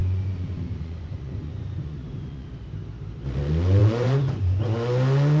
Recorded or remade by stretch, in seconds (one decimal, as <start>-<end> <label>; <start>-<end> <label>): 0.0-2.5 remade; 2.5-3.8 recorded; 3.8-4.6 remade; 4.6-5.4 recorded